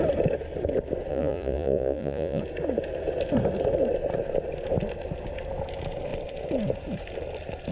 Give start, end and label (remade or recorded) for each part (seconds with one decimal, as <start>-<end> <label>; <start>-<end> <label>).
0.0-1.1 recorded; 1.1-2.4 remade; 2.4-7.7 recorded